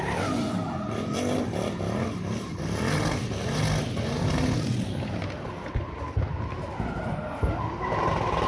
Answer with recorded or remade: recorded